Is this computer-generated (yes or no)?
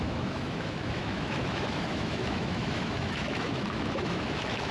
yes